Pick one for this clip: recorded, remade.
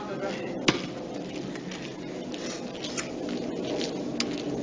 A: recorded